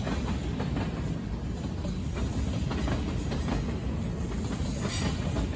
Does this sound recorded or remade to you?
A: recorded